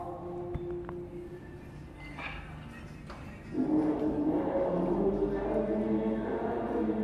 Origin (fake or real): real